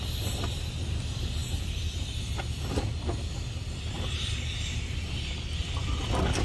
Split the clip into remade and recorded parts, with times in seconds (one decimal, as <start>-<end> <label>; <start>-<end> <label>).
0.0-6.4 recorded